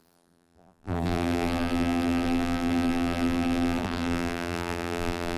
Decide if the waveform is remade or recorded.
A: remade